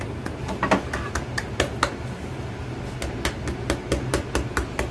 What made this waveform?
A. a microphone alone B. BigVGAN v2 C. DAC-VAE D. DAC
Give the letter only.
A